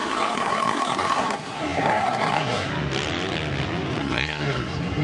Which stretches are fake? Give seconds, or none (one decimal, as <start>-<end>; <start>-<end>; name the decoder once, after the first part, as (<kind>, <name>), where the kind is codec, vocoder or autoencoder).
0.0-2.7 (codec, SNAC); 4.0-5.0

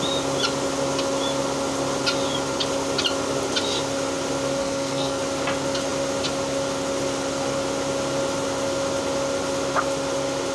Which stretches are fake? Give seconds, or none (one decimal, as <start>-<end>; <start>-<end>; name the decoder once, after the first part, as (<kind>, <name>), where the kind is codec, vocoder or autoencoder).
4.6-5.2 (codec, SNAC)

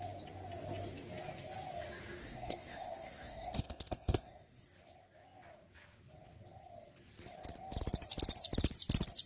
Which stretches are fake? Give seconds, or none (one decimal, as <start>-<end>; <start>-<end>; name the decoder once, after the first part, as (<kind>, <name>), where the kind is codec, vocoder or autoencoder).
2.2-4.6 (codec, SNAC)